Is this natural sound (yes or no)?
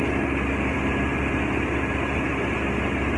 yes